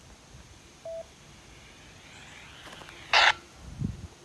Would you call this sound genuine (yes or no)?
yes